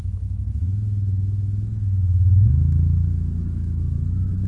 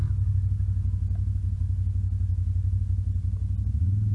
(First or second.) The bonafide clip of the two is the second